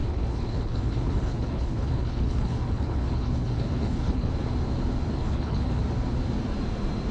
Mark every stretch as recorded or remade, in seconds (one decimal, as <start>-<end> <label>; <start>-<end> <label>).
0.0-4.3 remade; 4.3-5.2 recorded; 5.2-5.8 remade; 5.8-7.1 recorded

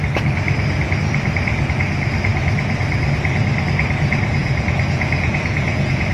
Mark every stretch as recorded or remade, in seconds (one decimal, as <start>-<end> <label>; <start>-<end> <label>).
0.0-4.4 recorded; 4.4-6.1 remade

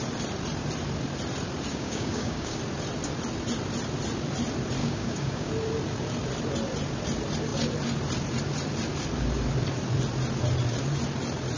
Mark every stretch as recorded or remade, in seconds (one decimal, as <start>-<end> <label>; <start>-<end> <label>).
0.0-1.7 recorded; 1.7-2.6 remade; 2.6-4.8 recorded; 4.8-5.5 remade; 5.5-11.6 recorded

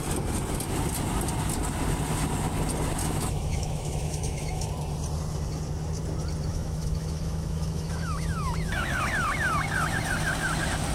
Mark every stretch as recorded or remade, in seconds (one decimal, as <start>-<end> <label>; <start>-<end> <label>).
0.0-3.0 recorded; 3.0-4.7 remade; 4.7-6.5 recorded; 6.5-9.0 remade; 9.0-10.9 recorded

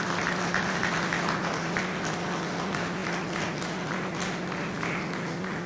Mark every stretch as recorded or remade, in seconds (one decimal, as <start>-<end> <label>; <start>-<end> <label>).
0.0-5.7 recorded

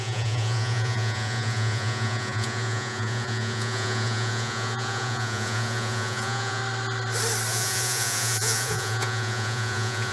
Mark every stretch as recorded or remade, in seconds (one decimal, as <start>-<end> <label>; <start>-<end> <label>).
0.0-6.6 remade; 6.6-7.5 recorded; 7.5-10.1 remade